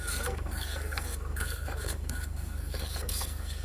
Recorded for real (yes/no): no